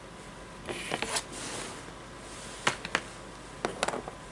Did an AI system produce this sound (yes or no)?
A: no